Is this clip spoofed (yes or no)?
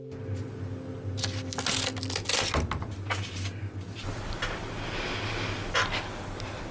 no